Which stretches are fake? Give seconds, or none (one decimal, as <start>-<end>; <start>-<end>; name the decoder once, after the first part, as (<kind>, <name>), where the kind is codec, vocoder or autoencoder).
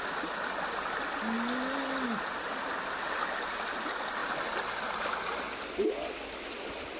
none